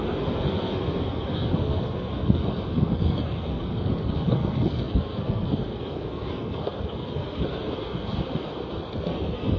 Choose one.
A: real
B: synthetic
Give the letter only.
B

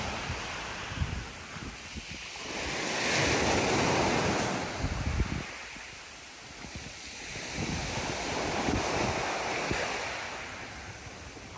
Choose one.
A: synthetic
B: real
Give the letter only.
B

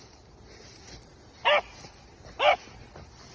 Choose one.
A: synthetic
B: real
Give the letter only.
B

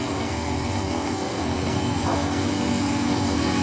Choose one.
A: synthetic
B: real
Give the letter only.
A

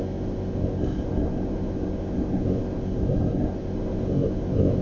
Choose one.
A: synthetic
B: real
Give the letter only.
A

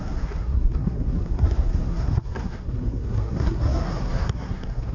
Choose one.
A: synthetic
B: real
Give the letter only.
A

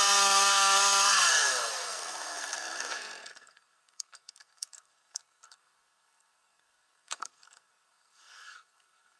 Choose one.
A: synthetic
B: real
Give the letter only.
A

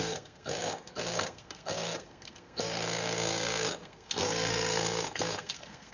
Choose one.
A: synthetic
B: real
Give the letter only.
A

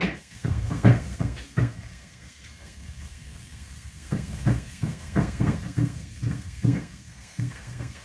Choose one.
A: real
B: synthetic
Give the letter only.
B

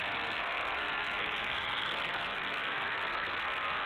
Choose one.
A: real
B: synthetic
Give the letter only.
B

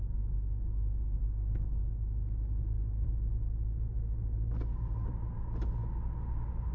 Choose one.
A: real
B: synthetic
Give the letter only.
A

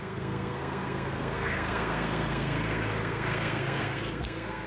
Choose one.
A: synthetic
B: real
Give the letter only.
A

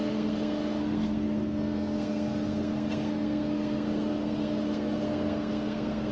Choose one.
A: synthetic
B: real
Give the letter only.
A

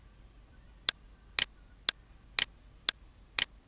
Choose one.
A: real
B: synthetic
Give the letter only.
A